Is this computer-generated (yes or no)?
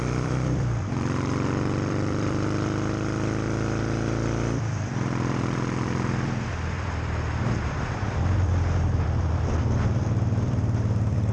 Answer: yes